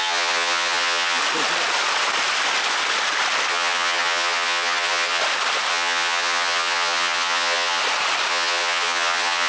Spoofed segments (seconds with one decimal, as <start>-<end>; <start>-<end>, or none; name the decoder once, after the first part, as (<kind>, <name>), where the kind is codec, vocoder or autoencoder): 0.0-1.2 (vocoder, HiFi-GAN); 3.5-5.2; 5.7-7.8; 8.3-9.5